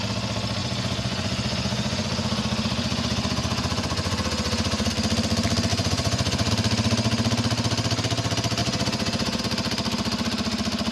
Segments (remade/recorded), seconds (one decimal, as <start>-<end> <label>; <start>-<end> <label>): 0.0-0.6 recorded; 0.6-4.9 remade; 4.9-5.7 recorded; 5.7-6.5 remade; 6.5-8.6 recorded; 8.6-9.4 remade; 9.4-10.9 recorded